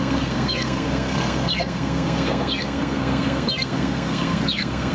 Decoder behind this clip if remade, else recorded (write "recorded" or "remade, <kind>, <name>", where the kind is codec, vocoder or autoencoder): remade, codec, SNAC